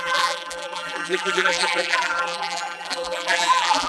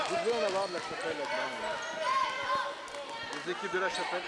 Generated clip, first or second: first